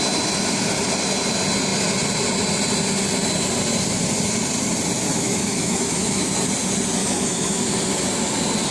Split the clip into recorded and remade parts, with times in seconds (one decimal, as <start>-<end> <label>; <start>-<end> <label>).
0.0-5.1 recorded; 5.1-6.2 remade; 6.2-7.0 recorded; 7.0-7.6 remade; 7.6-8.7 recorded